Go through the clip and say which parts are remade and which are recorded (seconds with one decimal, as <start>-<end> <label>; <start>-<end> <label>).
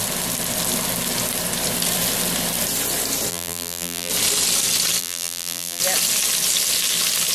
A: 0.0-3.3 recorded; 3.3-4.1 remade; 4.1-5.0 recorded; 5.0-5.8 remade; 5.8-7.3 recorded